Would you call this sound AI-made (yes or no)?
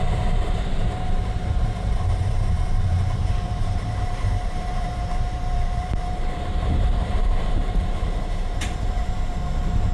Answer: yes